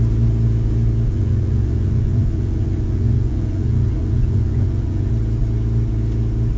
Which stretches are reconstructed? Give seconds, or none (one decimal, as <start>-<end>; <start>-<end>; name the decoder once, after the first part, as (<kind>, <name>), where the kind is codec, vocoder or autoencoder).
1.1-5.1 (vocoder, Vocos)